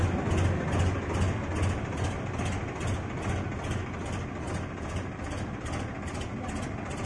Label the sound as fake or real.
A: real